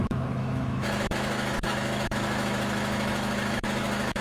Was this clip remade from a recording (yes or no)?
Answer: yes